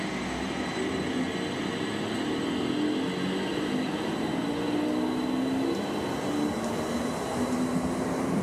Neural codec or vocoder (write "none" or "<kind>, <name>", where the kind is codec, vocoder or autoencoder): none